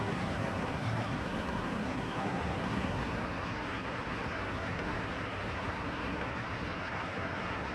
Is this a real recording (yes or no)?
no